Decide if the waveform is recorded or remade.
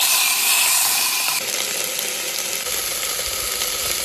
recorded